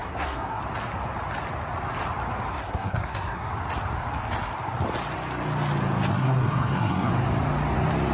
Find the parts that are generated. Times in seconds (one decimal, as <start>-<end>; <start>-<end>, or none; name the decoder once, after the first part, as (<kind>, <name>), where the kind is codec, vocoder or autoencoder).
0.0-0.6 (codec, SNAC); 2.5-3.5; 6.1-7.1